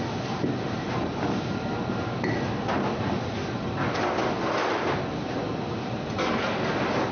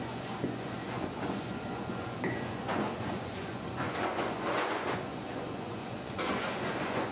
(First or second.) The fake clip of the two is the second